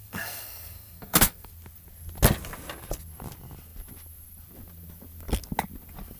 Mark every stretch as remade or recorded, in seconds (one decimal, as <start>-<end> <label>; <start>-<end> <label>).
0.0-1.5 remade; 1.5-6.2 recorded